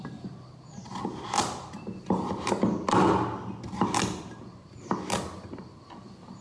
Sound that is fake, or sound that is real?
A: real